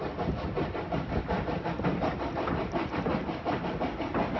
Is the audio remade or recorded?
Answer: recorded